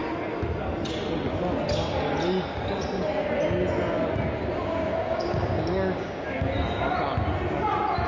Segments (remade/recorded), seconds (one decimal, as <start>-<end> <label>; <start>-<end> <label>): 0.0-4.6 recorded; 4.6-6.5 remade; 6.5-8.1 recorded